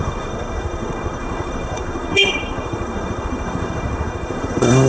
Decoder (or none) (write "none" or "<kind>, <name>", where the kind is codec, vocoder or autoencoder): codec, SNAC